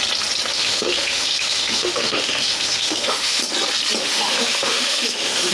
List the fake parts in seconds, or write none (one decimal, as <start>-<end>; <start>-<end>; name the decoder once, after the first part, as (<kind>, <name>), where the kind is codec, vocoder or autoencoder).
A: 0.5-3.4 (autoencoder, DAC-VAE); 4.0-5.5